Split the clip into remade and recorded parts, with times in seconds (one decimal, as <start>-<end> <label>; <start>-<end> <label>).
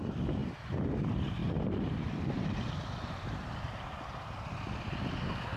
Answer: 0.0-5.6 recorded